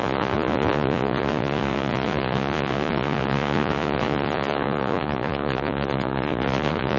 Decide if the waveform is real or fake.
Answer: fake